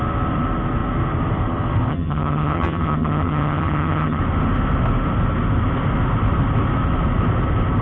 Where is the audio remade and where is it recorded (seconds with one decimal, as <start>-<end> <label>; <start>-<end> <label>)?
0.0-1.9 recorded; 1.9-4.2 remade; 4.2-7.8 recorded